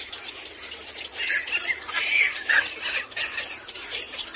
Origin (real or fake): real